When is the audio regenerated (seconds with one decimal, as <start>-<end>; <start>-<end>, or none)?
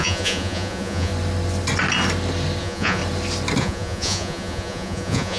0.0-1.1; 2.6-3.0; 3.6-5.4